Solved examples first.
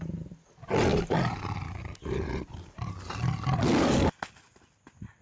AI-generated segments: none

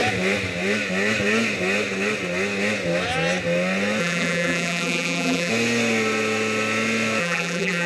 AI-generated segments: 4.0-5.5 (vocoder, BigVGAN v2); 7.2-7.9

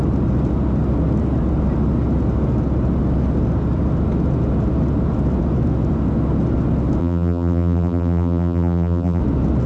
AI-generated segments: 7.0-9.2 (vocoder, BigVGAN v2)